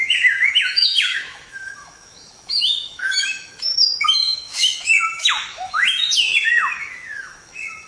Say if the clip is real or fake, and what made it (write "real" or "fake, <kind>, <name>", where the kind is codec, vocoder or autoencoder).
fake, autoencoder, DAC-VAE